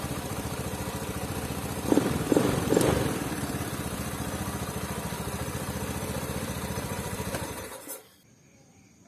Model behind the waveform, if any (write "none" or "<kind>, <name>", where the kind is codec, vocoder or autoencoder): vocoder, BigVGAN v2